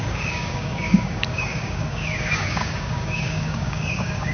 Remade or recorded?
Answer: remade